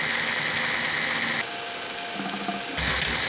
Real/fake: real